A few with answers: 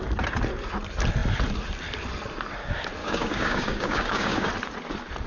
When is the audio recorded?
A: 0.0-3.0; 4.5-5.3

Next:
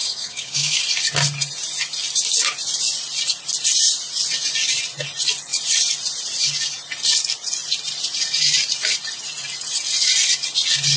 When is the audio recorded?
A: 0.8-11.0